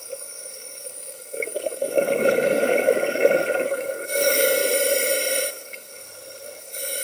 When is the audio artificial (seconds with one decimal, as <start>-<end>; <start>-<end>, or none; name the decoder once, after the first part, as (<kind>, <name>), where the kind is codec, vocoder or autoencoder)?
0.0-4.6 (codec, DAC); 5.5-6.0; 6.6-7.0